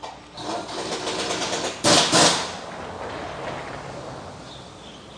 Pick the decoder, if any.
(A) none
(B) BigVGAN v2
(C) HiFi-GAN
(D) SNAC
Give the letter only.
A